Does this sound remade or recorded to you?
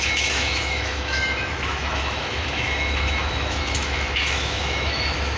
remade